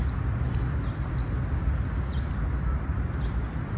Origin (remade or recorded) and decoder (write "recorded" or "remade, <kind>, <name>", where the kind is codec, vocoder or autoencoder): recorded